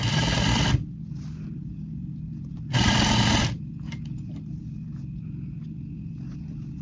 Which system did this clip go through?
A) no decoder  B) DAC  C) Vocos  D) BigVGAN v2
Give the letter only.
A